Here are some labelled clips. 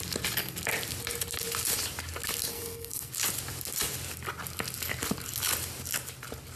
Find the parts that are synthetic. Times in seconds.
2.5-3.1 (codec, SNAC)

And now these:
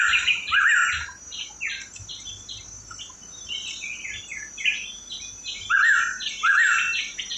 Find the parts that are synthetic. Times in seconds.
none

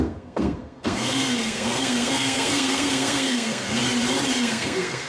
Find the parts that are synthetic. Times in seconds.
0.0-3.8 (codec, SNAC); 4.3-5.1

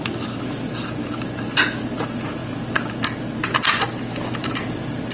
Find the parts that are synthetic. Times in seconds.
none

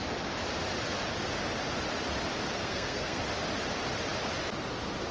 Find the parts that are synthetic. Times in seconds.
2.6-3.2 (codec, SNAC)

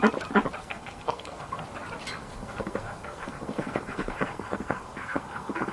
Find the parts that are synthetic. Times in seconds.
0.6-1.6 (codec, SNAC); 2.2-5.7

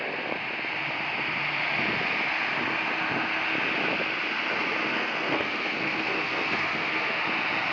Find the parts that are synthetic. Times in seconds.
4.9-7.2 (codec, SNAC)